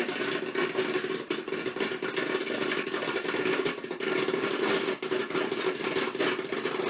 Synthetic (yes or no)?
no